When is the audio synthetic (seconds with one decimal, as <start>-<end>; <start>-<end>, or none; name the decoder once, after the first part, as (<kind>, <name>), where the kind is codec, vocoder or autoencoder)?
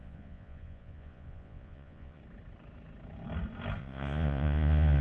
0.0-2.2 (vocoder, Vocos); 3.8-5.0